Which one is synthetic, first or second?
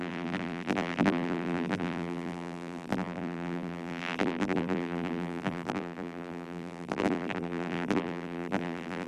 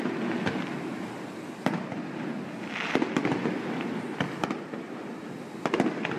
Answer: first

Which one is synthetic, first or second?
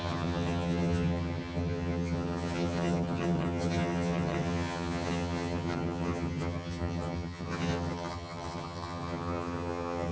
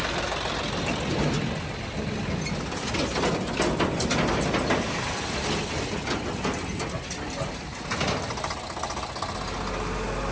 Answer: first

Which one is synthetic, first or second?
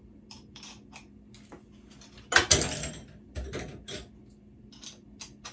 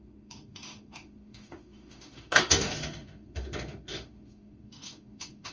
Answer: second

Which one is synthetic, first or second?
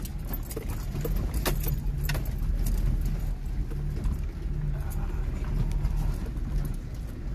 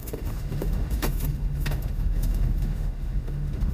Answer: second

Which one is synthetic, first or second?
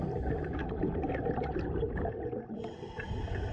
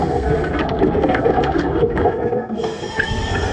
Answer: second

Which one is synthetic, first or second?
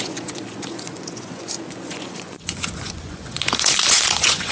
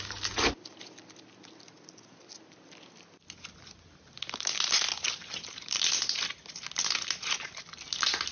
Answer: first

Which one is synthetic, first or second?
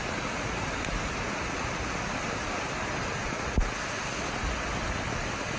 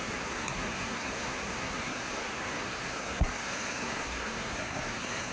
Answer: second